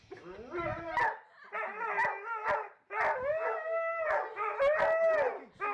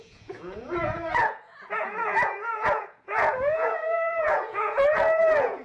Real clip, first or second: first